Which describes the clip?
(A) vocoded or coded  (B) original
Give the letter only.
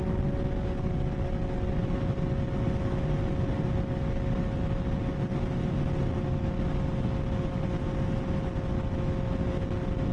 B